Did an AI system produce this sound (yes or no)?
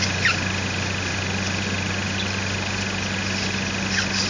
no